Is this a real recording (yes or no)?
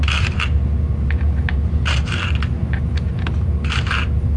yes